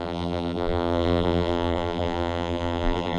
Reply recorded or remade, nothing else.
remade